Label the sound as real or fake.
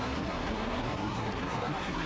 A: fake